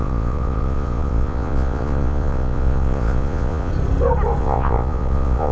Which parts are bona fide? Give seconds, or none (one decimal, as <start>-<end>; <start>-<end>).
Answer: 3.7-4.4